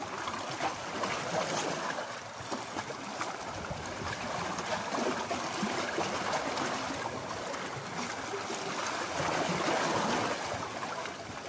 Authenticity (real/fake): real